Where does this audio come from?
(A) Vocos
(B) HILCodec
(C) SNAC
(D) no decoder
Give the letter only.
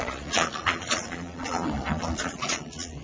A